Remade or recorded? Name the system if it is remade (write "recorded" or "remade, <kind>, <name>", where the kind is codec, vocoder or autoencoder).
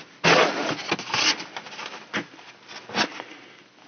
recorded